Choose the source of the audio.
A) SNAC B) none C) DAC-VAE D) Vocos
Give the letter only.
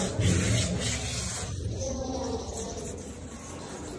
B